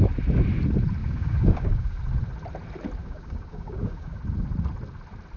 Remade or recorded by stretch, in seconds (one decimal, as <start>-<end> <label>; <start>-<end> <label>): 0.0-1.0 recorded; 1.0-2.0 remade; 2.0-3.0 recorded; 3.0-4.2 remade; 4.2-5.4 recorded